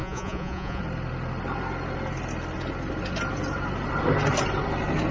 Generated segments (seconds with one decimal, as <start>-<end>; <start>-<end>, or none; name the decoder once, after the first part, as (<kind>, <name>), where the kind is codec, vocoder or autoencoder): 0.0-0.8 (vocoder, Vocos)